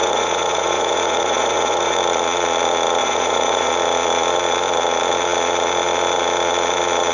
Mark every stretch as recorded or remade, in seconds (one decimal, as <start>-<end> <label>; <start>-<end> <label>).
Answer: 0.0-2.0 remade; 2.0-3.0 recorded; 3.0-3.7 remade; 3.7-7.1 recorded